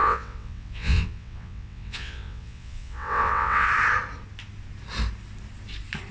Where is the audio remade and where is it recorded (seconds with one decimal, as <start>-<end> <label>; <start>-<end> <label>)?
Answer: 0.0-3.7 remade; 3.7-6.1 recorded